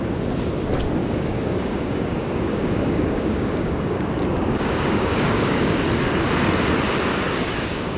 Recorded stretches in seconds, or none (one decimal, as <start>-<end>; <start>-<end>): 0.0-1.0; 5.8-7.1